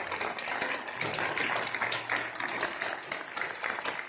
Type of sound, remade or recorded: recorded